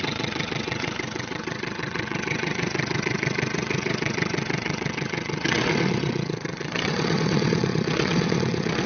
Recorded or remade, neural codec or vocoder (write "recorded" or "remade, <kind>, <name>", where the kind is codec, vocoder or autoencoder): remade, vocoder, WaveNeXt